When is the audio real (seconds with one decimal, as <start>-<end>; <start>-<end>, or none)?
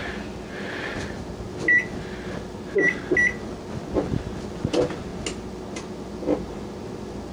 0.0-7.3